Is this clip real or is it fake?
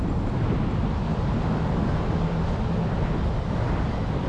real